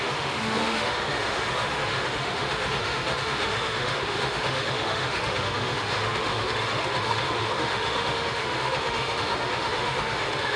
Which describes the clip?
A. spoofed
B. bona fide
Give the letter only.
A